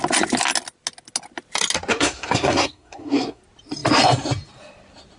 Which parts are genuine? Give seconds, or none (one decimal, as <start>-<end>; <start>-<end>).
0.0-1.9; 3.4-5.2